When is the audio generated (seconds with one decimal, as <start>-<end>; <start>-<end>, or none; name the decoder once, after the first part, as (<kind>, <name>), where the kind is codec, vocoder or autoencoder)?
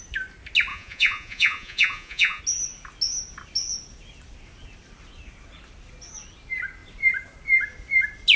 0.7-2.4 (vocoder, Vocos)